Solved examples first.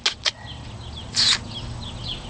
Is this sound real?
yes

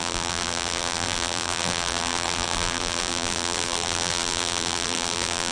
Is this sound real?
no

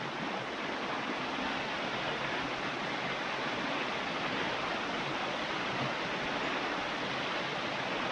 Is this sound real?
yes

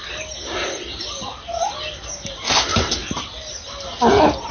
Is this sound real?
yes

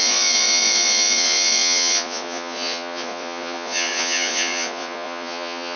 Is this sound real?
no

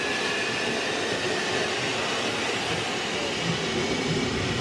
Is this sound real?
yes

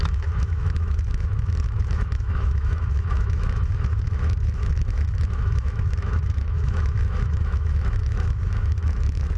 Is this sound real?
no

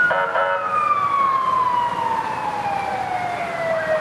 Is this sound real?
yes